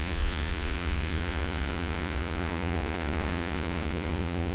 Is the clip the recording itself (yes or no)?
no